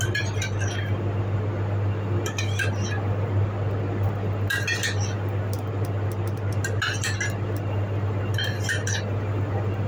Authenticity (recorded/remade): recorded